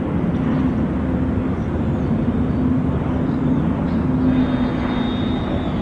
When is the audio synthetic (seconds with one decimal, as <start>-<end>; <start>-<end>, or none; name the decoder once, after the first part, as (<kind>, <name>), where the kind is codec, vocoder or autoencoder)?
1.4-4.0 (vocoder, BigVGAN v2)